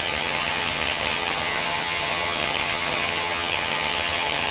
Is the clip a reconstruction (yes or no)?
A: yes